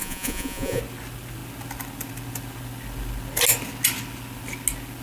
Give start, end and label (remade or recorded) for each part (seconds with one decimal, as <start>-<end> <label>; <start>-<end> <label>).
0.0-0.8 remade; 0.8-5.0 recorded